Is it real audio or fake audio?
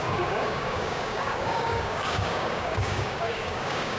fake